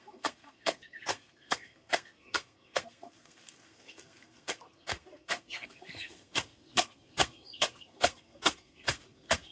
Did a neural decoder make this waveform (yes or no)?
yes